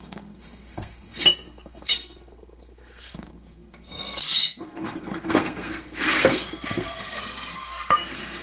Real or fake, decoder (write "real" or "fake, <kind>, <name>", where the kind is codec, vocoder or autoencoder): fake, codec, SNAC